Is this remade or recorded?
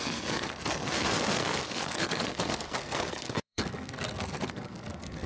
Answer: remade